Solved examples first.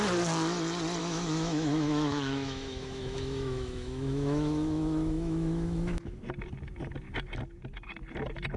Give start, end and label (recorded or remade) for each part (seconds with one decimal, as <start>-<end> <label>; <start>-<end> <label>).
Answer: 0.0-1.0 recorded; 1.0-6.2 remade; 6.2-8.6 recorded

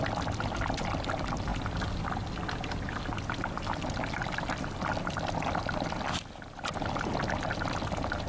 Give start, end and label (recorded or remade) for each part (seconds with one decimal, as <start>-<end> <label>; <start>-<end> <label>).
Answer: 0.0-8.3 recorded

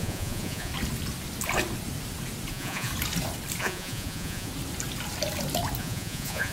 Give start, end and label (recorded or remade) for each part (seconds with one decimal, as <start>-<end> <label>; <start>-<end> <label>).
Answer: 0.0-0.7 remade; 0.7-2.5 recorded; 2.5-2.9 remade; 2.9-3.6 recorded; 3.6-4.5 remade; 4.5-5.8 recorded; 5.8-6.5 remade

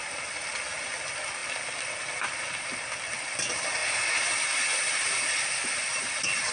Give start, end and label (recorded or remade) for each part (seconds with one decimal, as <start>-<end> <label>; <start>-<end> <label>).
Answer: 0.0-6.5 recorded